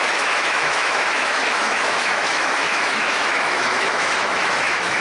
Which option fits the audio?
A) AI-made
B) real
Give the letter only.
A